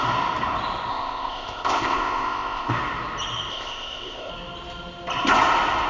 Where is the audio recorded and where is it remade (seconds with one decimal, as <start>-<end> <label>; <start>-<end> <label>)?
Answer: 0.0-0.9 recorded; 0.9-2.7 remade; 2.7-3.5 recorded; 3.5-4.3 remade; 4.3-5.9 recorded

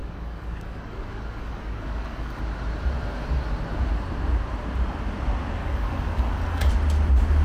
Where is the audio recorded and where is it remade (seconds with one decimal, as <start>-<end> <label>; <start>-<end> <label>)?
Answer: 0.0-2.4 remade; 2.4-5.6 recorded; 5.6-6.7 remade; 6.7-7.4 recorded

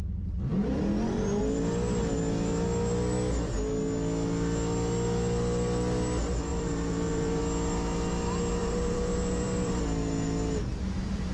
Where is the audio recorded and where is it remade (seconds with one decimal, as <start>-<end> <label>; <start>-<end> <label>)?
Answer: 0.0-6.5 recorded; 6.5-7.4 remade; 7.4-8.6 recorded; 8.6-9.8 remade; 9.8-11.3 recorded

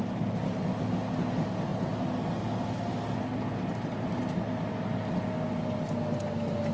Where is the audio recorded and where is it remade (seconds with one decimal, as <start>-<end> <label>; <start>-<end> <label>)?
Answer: 0.0-6.7 recorded

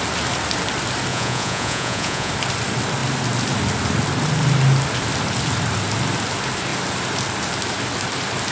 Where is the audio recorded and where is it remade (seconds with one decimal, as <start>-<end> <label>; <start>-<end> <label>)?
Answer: 0.0-1.1 recorded; 1.1-2.3 remade; 2.3-8.5 recorded